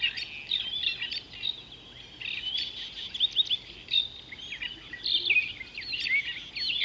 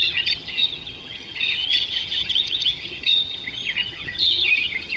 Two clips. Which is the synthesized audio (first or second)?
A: second